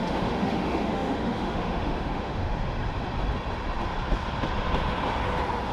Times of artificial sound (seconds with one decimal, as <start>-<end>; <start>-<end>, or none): 0.0-2.5